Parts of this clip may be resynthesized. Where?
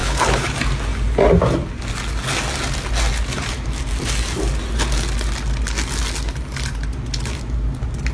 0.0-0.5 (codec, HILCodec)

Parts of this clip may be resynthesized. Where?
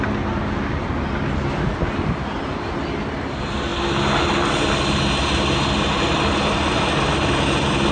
none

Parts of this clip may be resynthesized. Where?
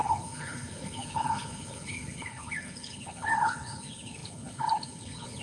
0.0-5.4 (codec, HILCodec)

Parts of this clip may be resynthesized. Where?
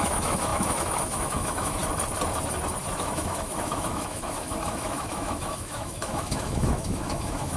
0.0-1.8 (autoencoder, DAC-VAE); 2.9-7.6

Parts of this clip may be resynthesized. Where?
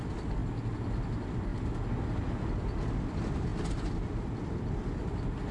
none